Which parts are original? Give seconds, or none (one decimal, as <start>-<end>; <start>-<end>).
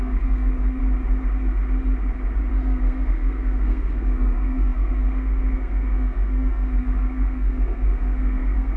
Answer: 0.8-2.5